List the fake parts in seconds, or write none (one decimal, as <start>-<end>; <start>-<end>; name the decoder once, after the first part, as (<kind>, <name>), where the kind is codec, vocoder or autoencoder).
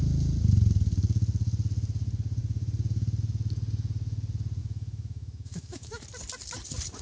4.6-6.0 (autoencoder, DAC-VAE)